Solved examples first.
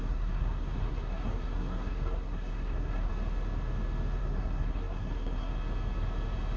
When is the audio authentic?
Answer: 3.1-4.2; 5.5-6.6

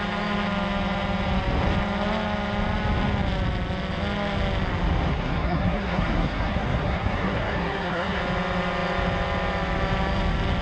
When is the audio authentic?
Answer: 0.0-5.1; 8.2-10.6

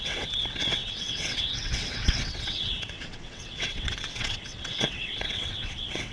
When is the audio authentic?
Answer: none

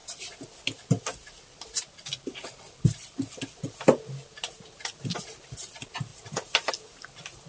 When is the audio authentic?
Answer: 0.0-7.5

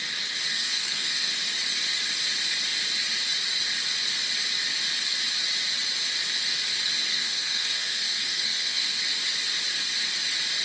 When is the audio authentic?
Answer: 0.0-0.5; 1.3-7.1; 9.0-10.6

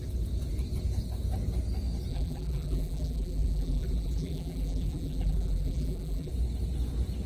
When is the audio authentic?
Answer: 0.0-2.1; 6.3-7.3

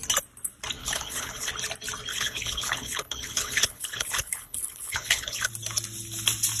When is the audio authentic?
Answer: 0.0-0.8; 1.5-2.1; 5.5-6.6

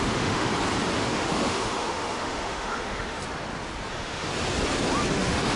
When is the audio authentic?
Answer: 0.5-1.0; 3.2-3.9; 4.3-5.1